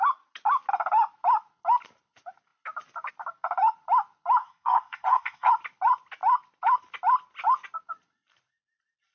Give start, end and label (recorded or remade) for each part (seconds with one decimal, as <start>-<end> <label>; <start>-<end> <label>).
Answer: 0.0-4.4 recorded; 4.4-5.5 remade; 5.5-9.1 recorded

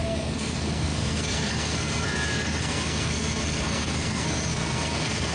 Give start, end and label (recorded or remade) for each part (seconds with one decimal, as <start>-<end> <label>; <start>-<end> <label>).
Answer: 0.0-5.3 remade

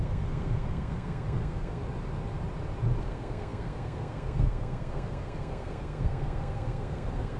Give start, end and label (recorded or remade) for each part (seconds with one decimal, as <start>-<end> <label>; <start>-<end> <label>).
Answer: 0.0-1.8 remade; 1.8-3.0 recorded; 3.0-7.4 remade